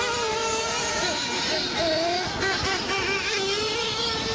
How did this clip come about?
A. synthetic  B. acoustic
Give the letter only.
B